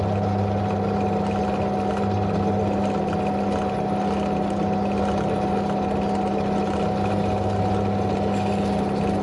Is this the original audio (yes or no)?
yes